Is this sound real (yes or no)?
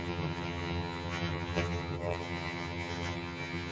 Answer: no